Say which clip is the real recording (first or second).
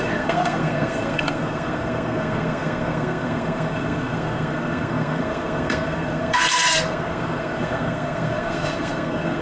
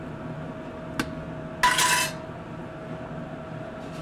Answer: second